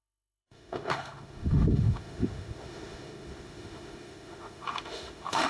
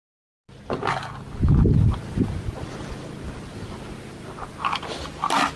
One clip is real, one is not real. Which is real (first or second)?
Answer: second